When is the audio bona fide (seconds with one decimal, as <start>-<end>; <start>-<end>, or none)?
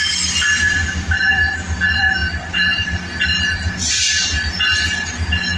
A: 4.7-5.6